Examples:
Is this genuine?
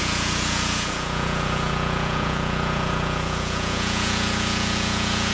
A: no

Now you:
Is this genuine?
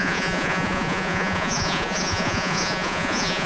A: no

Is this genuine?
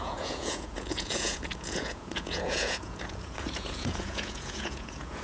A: no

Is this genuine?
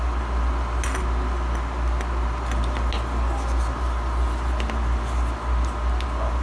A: yes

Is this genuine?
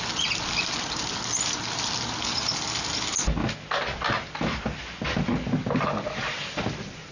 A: yes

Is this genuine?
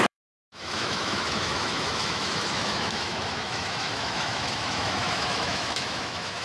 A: no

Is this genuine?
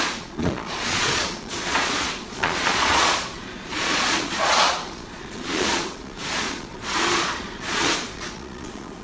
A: no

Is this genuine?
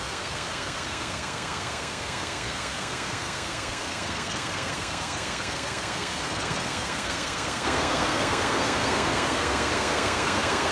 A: no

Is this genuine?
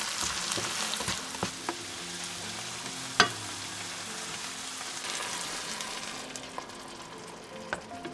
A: yes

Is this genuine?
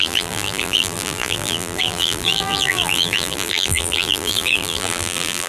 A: no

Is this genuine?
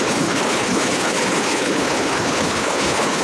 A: no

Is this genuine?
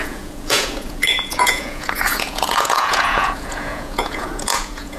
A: no